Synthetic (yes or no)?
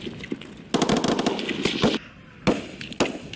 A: no